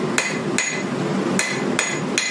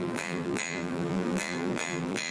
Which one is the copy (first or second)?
second